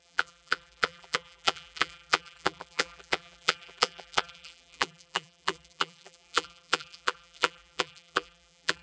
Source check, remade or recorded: remade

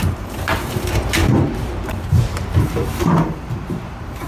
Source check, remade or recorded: remade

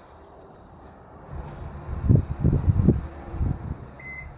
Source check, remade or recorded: remade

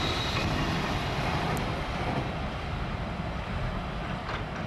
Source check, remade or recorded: remade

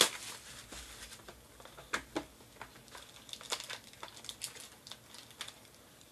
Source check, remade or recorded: recorded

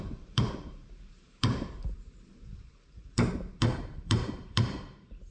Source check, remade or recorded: remade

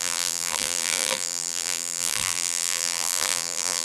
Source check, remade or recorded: remade